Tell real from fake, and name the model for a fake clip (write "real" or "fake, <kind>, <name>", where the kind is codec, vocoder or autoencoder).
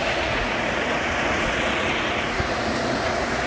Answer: fake, vocoder, Vocos